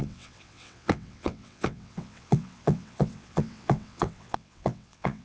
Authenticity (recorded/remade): remade